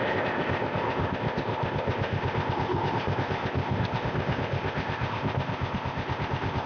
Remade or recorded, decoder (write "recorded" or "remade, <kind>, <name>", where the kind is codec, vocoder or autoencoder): remade, codec, ZipCodec